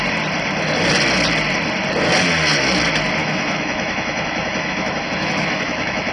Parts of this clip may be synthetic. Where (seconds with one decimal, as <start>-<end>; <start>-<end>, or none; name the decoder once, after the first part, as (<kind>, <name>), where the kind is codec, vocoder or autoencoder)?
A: 3.2-6.1 (autoencoder, DAC-VAE)